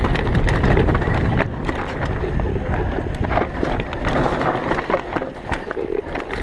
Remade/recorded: recorded